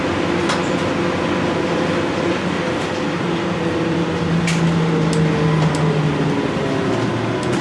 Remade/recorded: recorded